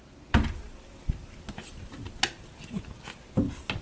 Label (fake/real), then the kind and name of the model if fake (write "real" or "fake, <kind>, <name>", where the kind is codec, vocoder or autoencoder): real